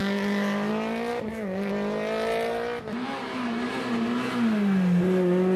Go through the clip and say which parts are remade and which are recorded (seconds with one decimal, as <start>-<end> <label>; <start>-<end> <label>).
0.0-0.7 remade; 0.7-1.1 recorded; 1.1-1.7 remade; 1.7-5.6 recorded